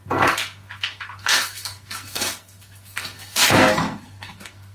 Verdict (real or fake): fake